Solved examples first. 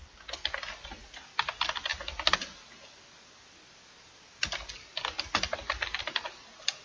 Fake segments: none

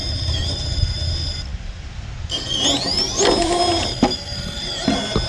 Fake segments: none